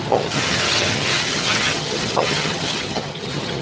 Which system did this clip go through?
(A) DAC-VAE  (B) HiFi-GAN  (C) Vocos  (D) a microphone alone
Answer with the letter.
B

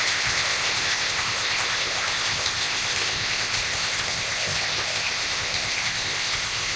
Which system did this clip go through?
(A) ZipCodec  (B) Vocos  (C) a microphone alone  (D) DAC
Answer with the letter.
A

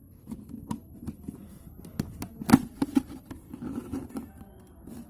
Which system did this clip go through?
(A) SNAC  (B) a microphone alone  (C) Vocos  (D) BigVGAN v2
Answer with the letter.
B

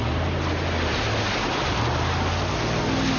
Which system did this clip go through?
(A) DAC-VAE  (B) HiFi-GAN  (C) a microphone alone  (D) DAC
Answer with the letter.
C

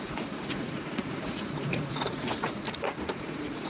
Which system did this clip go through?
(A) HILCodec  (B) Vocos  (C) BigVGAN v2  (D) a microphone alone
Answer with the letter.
B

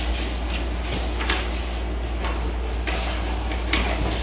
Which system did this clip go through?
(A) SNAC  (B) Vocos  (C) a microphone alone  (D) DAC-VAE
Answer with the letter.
C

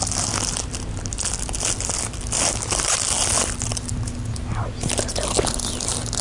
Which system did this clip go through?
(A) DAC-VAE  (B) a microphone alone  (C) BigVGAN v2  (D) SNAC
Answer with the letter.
B